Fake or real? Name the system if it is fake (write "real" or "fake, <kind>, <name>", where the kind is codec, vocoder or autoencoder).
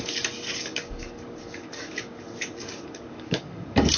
fake, codec, DAC